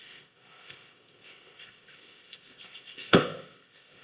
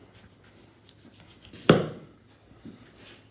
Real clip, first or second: second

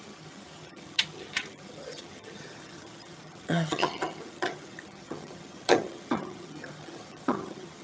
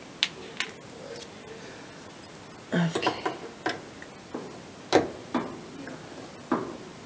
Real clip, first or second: second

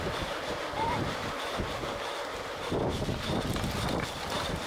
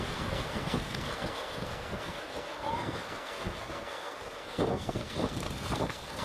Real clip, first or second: first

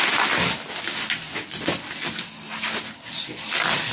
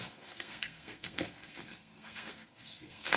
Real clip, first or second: first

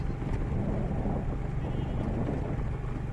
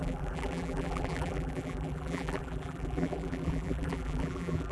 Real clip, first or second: first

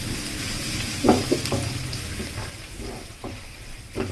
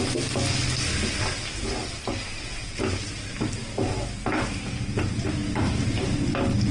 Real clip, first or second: second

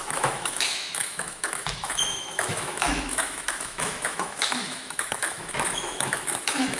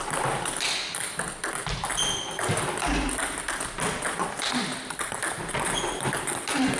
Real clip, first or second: second